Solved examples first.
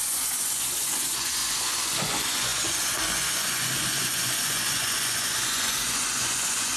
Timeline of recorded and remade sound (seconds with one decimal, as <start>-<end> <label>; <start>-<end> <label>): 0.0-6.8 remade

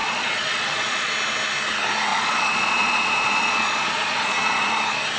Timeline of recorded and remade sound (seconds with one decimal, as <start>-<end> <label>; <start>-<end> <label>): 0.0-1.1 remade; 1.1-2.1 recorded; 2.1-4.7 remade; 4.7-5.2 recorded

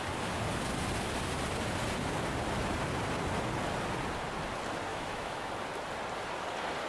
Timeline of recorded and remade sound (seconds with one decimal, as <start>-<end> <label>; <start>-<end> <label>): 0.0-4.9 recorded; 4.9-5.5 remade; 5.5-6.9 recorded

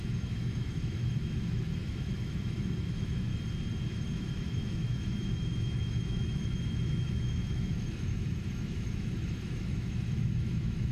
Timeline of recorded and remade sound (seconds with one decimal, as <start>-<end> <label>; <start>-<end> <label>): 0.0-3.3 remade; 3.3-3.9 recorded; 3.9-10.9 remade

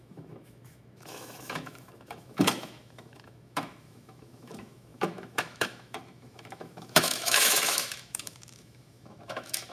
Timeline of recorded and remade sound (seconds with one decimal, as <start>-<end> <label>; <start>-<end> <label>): 0.0-9.7 remade

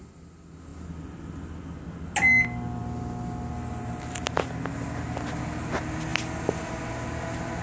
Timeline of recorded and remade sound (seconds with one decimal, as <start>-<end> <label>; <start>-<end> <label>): 0.0-0.7 recorded; 0.7-1.8 remade; 1.8-2.8 recorded; 2.8-3.5 remade; 3.5-7.6 recorded

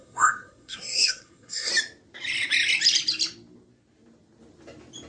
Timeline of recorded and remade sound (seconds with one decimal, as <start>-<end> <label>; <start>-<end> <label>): 0.0-1.7 remade; 1.7-5.1 recorded

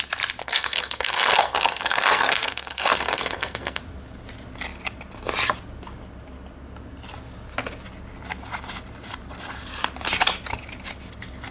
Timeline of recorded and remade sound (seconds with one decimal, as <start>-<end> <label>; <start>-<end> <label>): 0.0-0.4 recorded; 0.4-3.8 remade; 3.8-11.5 recorded